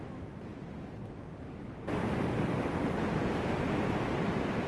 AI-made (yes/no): no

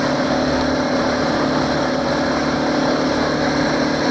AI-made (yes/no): no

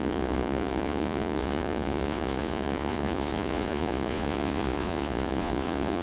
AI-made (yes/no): yes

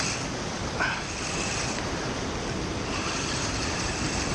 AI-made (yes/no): no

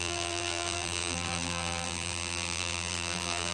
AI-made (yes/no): yes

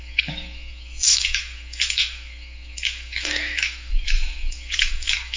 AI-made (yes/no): yes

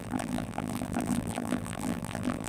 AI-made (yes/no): yes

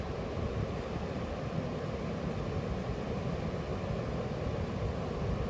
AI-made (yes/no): no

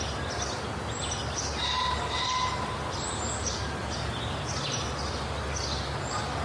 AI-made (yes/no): no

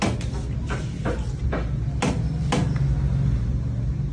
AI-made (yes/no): no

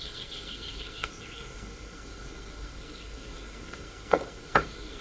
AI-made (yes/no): yes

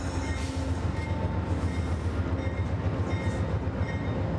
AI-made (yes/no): no